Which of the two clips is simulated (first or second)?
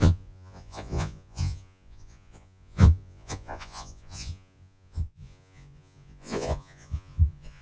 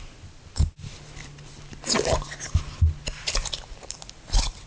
first